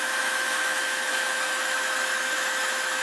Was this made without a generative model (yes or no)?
no